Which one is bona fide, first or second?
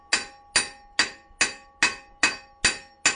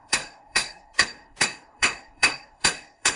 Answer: first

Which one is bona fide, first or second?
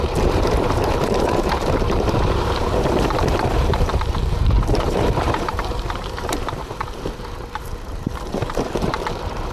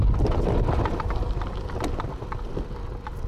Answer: second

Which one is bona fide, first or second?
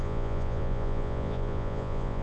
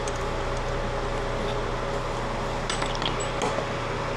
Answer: second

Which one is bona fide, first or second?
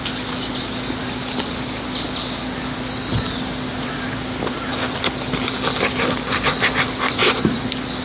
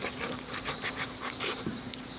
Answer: first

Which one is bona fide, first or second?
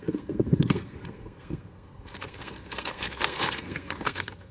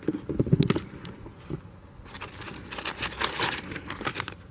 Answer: second